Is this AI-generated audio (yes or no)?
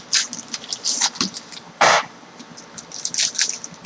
no